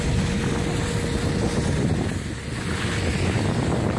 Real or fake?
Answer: real